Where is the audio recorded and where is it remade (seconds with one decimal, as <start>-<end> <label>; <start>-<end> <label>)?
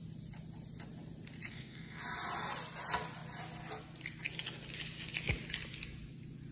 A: 0.0-1.5 recorded; 1.5-2.0 remade; 2.0-6.5 recorded